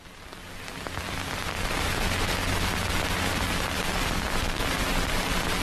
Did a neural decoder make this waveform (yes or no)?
no